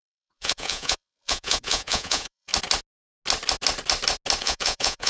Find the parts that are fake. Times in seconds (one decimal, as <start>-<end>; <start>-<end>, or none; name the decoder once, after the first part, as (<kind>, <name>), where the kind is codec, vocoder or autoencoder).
0.0-2.5 (vocoder, Vocos); 4.4-5.1